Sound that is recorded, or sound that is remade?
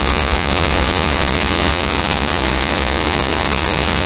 remade